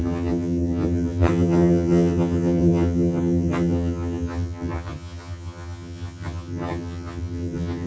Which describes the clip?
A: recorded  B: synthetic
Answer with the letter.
B